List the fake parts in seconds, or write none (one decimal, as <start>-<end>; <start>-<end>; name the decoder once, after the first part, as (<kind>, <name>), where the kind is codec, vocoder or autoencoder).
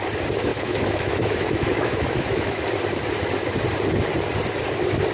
0.5-2.6 (autoencoder, DAC-VAE)